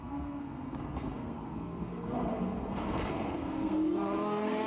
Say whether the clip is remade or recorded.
remade